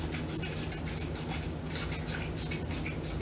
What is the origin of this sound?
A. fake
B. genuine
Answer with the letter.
B